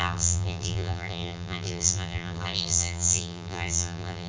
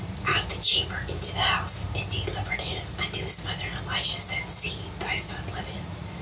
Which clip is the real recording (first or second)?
second